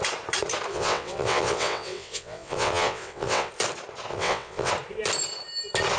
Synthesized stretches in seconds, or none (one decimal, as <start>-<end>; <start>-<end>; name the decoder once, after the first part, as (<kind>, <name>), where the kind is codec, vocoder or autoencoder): 0.7-3.5 (vocoder, WaveNeXt); 4.1-4.7